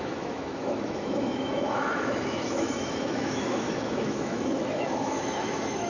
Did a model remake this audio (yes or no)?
yes